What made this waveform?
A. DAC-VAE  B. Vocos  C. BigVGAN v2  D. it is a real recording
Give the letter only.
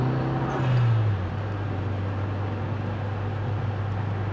D